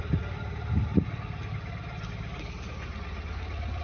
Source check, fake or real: real